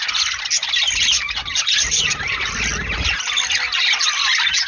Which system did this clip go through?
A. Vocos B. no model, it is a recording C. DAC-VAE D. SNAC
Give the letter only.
B